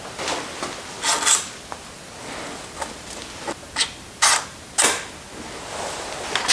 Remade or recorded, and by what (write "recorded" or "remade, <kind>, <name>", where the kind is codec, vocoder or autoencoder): recorded